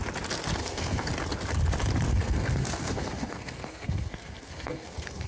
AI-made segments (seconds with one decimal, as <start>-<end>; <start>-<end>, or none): 0.6-1.1; 2.1-5.3